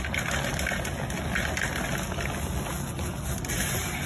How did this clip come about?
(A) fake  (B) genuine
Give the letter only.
B